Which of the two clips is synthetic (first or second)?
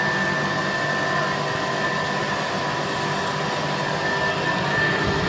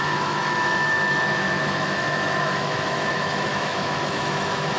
second